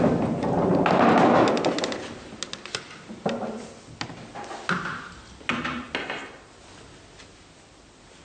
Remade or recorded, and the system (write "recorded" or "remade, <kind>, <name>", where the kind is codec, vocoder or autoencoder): recorded